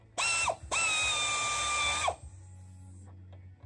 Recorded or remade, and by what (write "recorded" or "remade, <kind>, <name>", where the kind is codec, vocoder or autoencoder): recorded